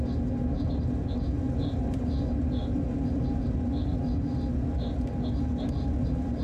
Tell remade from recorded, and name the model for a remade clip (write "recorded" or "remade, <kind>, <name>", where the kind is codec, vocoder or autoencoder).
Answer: recorded